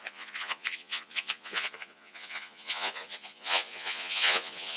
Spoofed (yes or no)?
yes